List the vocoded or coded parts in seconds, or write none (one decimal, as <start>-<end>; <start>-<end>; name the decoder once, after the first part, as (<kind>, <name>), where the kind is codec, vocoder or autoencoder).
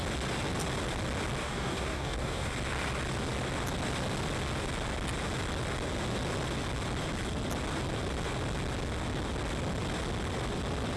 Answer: 1.4-2.5 (codec, DAC)